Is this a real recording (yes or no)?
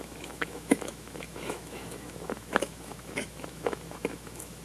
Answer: no